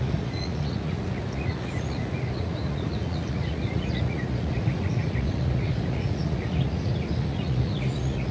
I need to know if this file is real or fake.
fake